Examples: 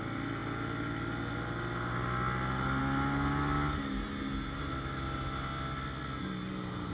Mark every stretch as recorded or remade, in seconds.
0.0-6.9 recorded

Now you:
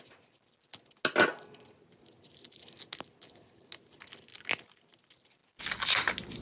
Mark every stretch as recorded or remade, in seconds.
0.0-6.4 recorded

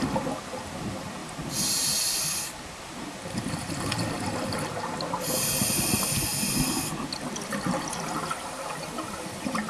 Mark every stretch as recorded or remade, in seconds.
0.0-9.7 recorded

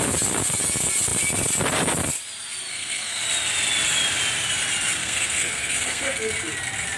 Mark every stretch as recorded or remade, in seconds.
0.0-2.7 recorded; 2.7-3.2 remade; 3.2-5.0 recorded; 5.0-6.3 remade; 6.3-7.0 recorded

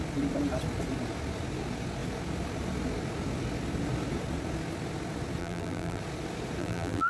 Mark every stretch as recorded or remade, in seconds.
0.0-5.4 recorded; 5.4-6.0 remade; 6.0-6.6 recorded; 6.6-7.1 remade

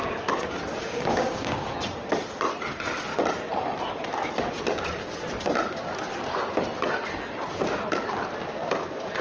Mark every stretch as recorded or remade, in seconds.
0.0-0.8 recorded; 0.8-1.7 remade; 1.7-9.2 recorded